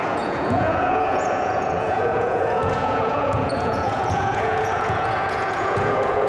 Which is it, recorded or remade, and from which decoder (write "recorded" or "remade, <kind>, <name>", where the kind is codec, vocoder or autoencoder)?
remade, vocoder, Vocos